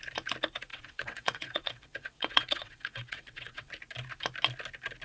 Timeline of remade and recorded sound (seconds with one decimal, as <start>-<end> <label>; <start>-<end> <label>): 0.0-0.7 recorded; 0.7-3.7 remade; 3.7-5.0 recorded